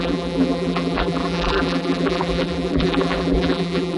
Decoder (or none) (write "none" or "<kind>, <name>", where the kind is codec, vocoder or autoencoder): vocoder, BigVGAN v2